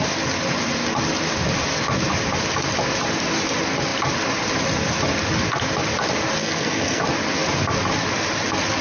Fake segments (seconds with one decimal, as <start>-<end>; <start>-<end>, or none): 6.4-7.0